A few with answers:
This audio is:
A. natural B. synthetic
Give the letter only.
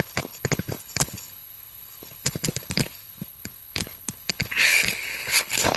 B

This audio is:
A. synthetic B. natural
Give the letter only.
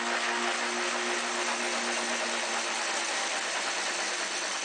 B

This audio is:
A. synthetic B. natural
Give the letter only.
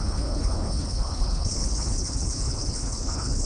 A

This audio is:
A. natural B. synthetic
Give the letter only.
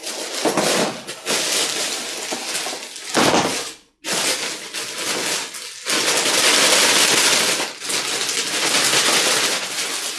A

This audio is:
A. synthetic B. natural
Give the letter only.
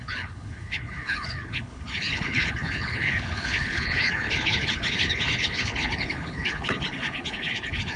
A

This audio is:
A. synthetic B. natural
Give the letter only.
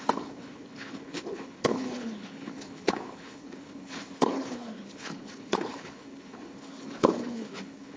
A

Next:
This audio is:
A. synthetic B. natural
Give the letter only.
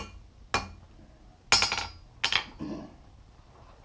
B